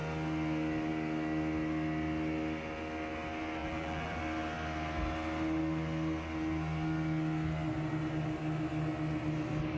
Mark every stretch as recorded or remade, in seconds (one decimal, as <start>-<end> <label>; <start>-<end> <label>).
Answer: 0.0-3.6 recorded; 3.6-4.2 remade; 4.2-9.8 recorded